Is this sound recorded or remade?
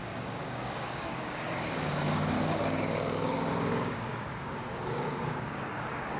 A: remade